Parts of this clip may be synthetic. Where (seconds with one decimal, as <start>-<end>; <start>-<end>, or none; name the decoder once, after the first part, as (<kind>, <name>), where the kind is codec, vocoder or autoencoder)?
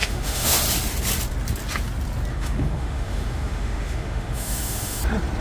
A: 0.0-0.6 (autoencoder, DAC-VAE); 2.3-5.0